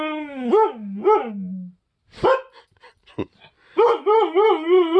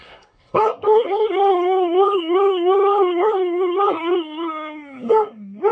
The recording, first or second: first